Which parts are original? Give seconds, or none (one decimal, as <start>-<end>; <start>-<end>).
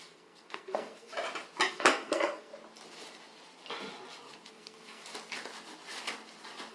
1.1-1.7; 2.5-4.5; 5.0-6.7